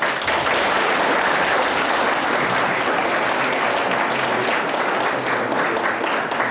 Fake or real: real